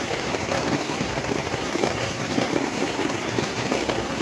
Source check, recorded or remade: remade